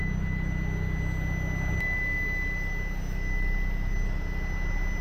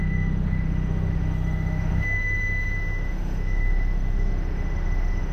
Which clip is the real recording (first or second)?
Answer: first